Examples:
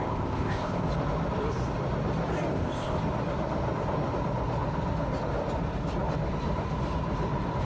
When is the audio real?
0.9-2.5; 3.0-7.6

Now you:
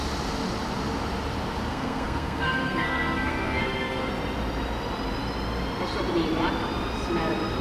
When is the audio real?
0.0-1.7; 4.1-7.6

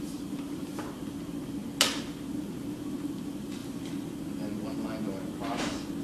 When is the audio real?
0.0-6.0